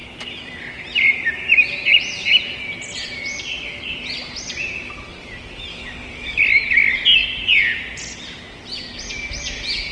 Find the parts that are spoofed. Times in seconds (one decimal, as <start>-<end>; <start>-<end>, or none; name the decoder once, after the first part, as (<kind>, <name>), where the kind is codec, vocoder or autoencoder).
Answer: 5.7-6.4 (codec, DAC)